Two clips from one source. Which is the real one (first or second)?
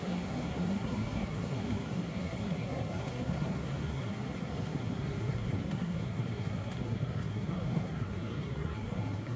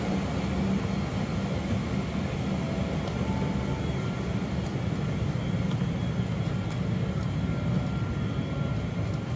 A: second